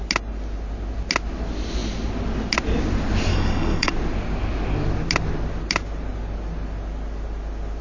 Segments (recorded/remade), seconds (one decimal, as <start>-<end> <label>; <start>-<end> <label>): 0.0-3.3 recorded; 3.3-3.9 remade; 3.9-7.8 recorded

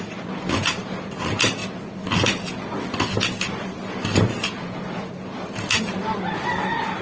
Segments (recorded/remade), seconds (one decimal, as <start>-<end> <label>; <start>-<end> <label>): 0.0-7.0 recorded

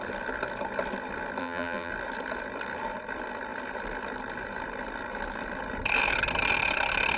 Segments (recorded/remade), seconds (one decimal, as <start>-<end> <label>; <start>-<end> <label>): 0.0-1.4 recorded; 1.4-1.9 remade; 1.9-7.2 recorded